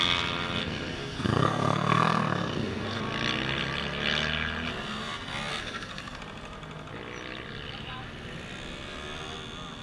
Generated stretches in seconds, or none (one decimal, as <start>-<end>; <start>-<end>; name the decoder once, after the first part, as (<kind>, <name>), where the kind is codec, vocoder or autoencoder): 0.6-3.0 (codec, SNAC); 5.5-6.2